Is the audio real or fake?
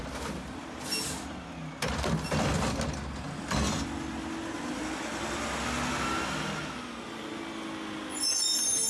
real